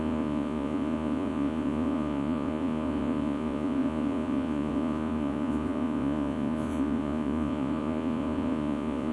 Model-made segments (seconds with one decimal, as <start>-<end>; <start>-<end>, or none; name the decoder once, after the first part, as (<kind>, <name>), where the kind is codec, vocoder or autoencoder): 0.0-9.1 (vocoder, Vocos)